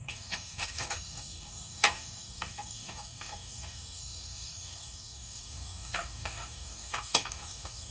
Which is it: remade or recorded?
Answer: remade